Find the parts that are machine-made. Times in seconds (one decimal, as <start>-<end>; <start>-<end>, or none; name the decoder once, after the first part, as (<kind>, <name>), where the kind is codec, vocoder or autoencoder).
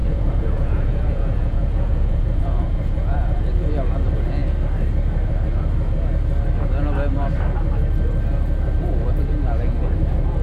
0.0-3.7 (vocoder, Vocos)